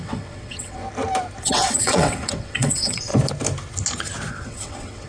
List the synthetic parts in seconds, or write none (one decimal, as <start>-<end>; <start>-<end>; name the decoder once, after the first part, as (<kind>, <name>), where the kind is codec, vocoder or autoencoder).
0.0-0.8 (vocoder, WaveNeXt); 1.4-3.1; 4.3-5.1